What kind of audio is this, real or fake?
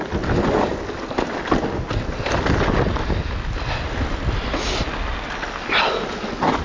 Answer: real